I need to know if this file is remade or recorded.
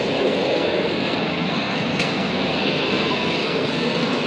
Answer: remade